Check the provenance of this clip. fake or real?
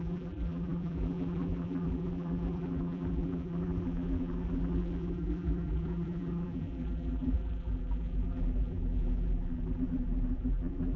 fake